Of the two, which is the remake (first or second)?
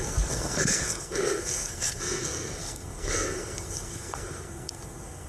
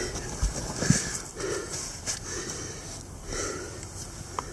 first